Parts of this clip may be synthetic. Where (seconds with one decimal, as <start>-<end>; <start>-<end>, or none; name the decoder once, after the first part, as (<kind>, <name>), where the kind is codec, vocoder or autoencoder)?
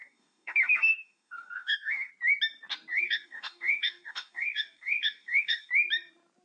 0.0-2.1 (codec, DAC); 2.9-5.7